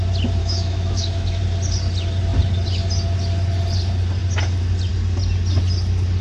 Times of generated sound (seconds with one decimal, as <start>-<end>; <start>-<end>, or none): 0.4-1.4